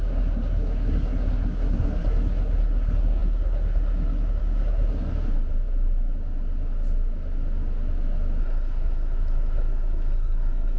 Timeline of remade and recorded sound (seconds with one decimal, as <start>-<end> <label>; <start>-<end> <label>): 0.0-5.1 remade; 5.1-8.4 recorded; 8.4-10.8 remade

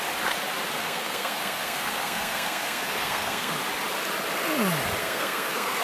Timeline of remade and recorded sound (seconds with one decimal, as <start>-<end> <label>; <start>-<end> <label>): 0.0-0.8 recorded; 0.8-3.5 remade; 3.5-5.0 recorded; 5.0-5.8 remade

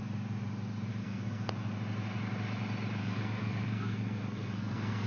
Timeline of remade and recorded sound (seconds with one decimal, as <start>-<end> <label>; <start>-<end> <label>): 0.0-1.0 recorded; 1.0-1.5 remade; 1.5-3.0 recorded; 3.0-5.1 remade

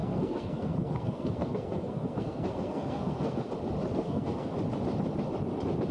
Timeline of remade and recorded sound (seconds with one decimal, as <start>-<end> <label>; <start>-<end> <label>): 0.0-3.5 remade; 3.5-3.9 recorded; 3.9-4.5 remade; 4.5-5.9 recorded